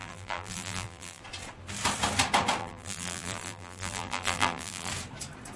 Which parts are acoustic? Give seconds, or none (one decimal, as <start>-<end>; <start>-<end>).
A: 1.2-2.6; 4.9-5.6